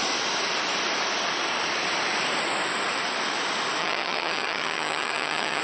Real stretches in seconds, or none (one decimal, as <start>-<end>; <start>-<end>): 0.0-3.8

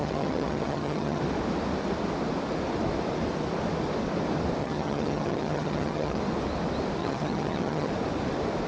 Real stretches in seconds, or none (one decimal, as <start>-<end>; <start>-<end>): 1.2-4.6; 6.2-7.0; 7.9-8.7

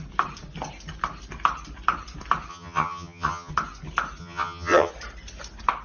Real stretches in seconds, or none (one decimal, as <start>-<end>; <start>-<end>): 0.0-2.5; 3.5-4.2; 4.9-5.8

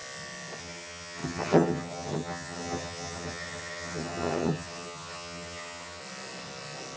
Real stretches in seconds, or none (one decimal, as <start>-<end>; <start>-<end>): 0.0-0.6; 6.0-7.0

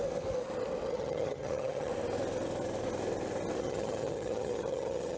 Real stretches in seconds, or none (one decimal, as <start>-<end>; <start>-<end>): 0.0-0.9; 1.9-3.6